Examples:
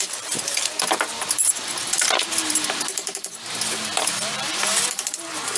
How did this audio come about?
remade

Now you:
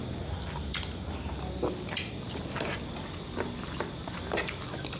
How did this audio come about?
recorded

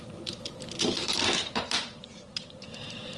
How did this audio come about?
remade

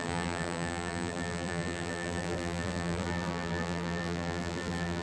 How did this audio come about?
remade